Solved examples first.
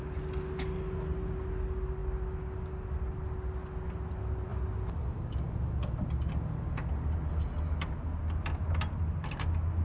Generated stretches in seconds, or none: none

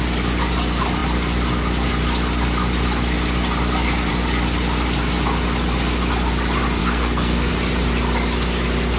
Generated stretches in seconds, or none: 6.8-7.5 (codec, SNAC)

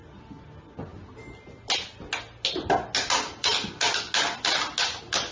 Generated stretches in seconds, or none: none